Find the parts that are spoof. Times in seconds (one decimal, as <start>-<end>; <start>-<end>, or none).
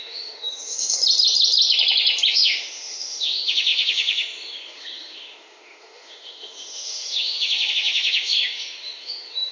0.0-1.0; 2.3-9.5